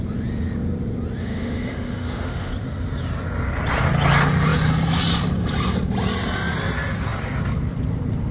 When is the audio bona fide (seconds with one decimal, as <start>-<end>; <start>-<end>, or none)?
0.0-1.2; 2.5-8.3